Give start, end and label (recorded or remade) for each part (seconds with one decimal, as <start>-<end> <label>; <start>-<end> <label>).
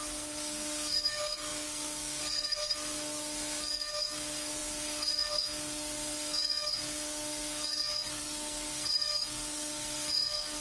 0.0-10.6 remade